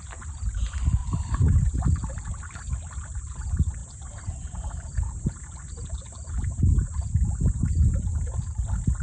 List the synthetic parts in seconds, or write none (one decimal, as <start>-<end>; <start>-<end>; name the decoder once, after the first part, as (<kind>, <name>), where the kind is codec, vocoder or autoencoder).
none